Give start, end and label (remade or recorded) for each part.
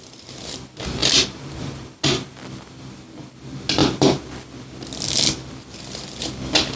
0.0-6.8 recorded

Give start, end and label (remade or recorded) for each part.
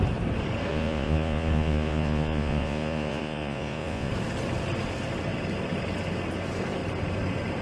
0.0-0.7 recorded; 0.7-4.1 remade; 4.1-7.6 recorded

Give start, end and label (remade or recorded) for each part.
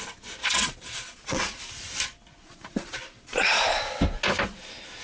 0.0-0.4 recorded; 0.4-1.6 remade; 1.6-2.4 recorded; 2.4-3.6 remade; 3.6-5.0 recorded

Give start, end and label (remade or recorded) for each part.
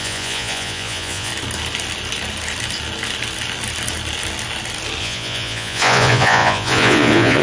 0.0-1.3 remade; 1.3-5.0 recorded; 5.0-7.4 remade